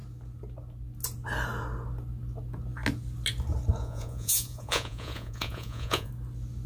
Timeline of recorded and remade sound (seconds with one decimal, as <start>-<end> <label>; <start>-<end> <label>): 0.0-3.8 recorded; 3.8-6.1 remade; 6.1-6.7 recorded